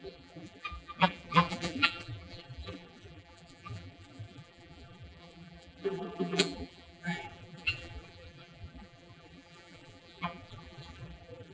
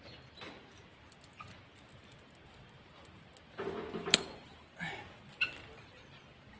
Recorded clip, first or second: second